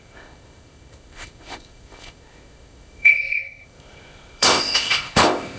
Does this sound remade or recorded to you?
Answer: remade